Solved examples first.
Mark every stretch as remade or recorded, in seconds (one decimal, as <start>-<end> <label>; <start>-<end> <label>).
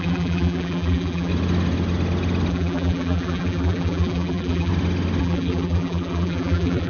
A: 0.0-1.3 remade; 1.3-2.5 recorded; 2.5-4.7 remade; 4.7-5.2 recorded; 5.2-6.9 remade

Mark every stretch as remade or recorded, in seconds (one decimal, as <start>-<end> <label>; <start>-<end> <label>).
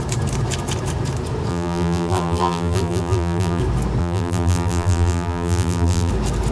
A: 0.0-1.5 recorded; 1.5-3.6 remade; 3.6-4.0 recorded; 4.0-6.1 remade; 6.1-6.5 recorded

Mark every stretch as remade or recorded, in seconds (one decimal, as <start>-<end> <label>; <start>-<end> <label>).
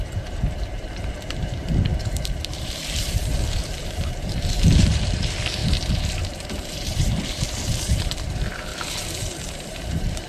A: 0.0-8.7 remade; 8.7-9.5 recorded; 9.5-10.3 remade